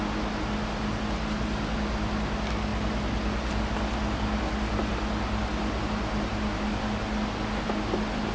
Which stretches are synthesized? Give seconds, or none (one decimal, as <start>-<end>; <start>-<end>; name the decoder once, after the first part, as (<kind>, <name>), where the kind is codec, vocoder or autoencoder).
none